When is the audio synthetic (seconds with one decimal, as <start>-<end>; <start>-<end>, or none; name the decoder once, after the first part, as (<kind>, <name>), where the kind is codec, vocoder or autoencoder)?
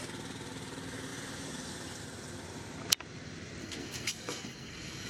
3.6-5.1 (codec, SNAC)